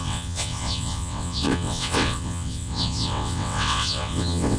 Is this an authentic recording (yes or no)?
no